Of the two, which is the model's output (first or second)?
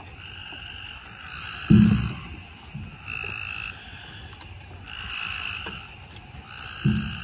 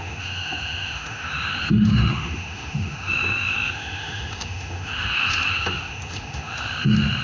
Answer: second